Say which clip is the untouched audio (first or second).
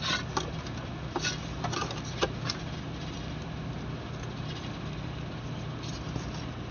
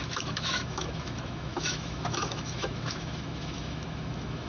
first